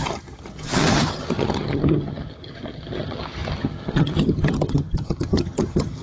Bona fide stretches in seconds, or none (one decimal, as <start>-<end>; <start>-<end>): none